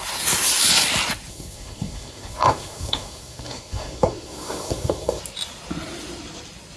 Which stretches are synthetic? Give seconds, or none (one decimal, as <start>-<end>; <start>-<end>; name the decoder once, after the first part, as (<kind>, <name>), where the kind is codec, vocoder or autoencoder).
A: 1.3-5.2 (codec, SNAC)